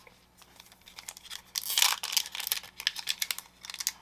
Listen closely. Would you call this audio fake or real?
real